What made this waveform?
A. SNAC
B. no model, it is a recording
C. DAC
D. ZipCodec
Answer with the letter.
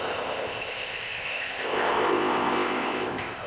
D